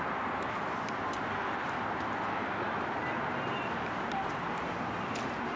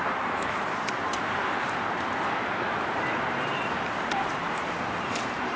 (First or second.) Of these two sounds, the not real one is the second